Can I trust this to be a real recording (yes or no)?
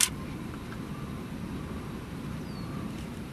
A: yes